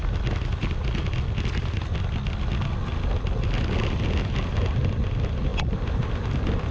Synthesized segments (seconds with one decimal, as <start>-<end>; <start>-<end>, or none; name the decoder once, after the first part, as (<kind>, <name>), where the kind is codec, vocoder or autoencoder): none